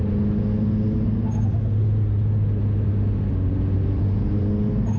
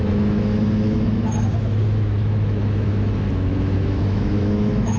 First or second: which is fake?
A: second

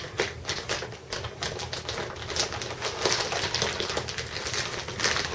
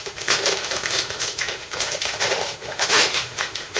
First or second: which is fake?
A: second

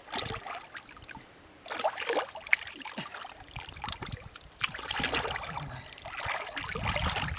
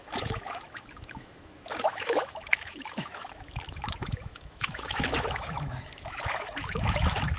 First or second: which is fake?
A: second